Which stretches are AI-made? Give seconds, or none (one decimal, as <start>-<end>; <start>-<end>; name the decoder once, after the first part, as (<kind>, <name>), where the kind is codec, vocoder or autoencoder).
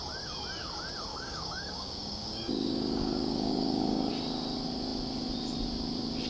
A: 1.1-4.1 (codec, DAC)